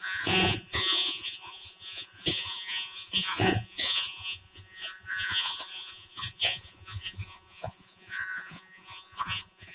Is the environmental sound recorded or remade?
remade